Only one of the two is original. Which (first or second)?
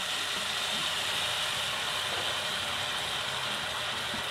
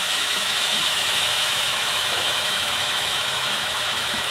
first